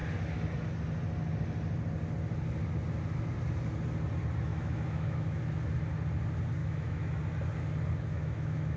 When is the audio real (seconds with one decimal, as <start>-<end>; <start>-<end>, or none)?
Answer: 0.0-4.5; 5.4-6.6; 7.2-8.1